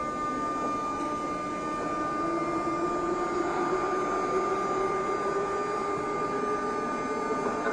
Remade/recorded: recorded